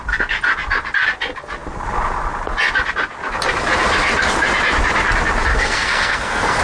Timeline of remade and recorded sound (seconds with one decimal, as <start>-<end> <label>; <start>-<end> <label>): 0.0-5.5 recorded; 5.5-6.6 remade